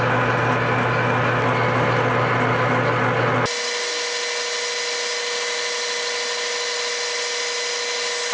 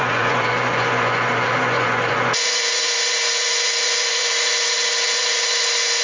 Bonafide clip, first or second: first